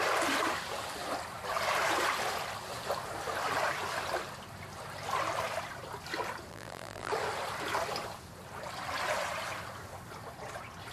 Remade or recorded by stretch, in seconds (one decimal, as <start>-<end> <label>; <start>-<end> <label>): 0.0-6.5 recorded; 6.5-7.1 remade; 7.1-10.9 recorded